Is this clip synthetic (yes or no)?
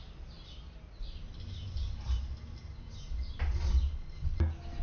no